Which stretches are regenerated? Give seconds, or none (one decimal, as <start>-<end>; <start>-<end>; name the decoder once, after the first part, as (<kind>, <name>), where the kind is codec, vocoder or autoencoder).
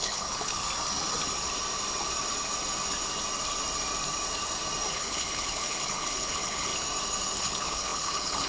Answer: 0.0-0.6 (codec, HILCodec); 4.9-6.7; 7.4-8.5